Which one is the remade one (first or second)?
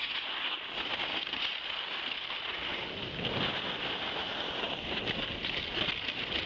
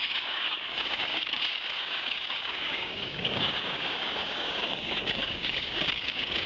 second